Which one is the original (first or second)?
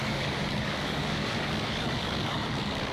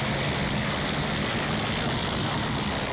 second